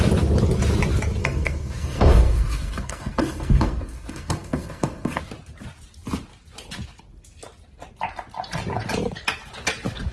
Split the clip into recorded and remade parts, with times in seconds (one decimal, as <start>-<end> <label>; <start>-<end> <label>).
0.0-1.2 recorded; 1.2-5.2 remade; 5.2-10.1 recorded